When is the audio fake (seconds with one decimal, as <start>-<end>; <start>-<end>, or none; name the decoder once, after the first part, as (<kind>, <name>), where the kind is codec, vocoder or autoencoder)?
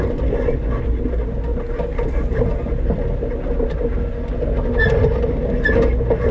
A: none